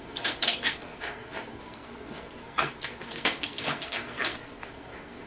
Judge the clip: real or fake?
fake